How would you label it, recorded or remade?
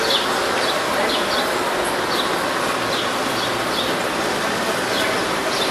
recorded